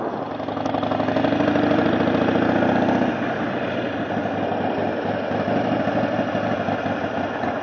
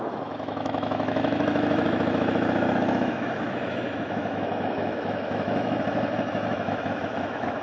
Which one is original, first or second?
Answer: first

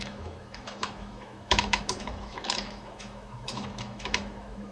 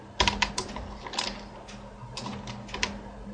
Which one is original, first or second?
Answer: second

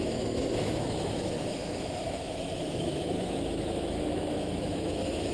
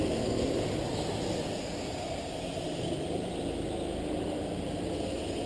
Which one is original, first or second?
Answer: second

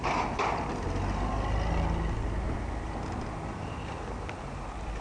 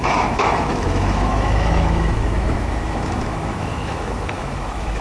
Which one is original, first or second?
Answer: first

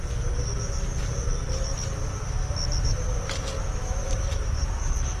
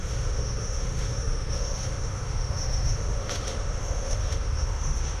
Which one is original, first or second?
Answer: first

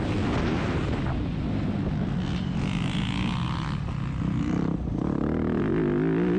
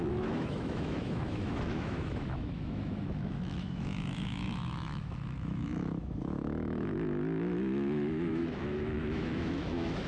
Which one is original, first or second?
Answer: first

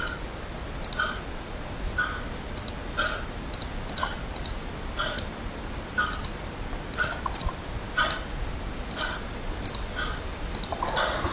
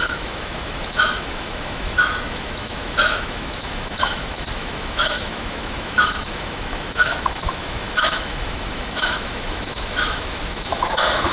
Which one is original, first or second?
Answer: first